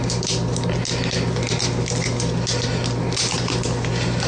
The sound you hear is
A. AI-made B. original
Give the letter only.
B